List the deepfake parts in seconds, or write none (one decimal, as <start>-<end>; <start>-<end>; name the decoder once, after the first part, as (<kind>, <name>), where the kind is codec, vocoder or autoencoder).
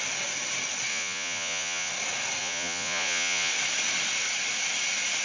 0.9-1.9 (vocoder, Vocos); 2.4-3.5